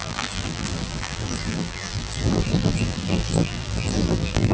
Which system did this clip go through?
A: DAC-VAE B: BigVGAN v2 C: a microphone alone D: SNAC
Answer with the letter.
B